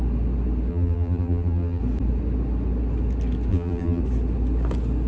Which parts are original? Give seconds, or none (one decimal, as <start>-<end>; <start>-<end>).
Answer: 0.0-0.7; 1.8-3.5; 4.0-5.1